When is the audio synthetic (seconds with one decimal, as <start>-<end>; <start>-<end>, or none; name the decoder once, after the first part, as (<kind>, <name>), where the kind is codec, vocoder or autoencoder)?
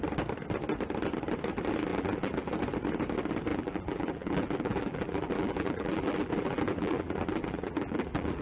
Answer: 1.9-2.6 (vocoder, BigVGAN v2); 3.5-8.4